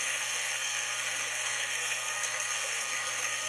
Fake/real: fake